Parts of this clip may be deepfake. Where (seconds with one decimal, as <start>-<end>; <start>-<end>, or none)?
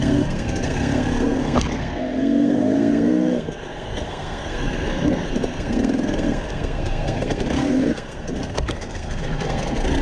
0.0-10.0